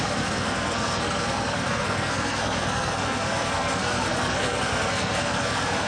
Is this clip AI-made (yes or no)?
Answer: yes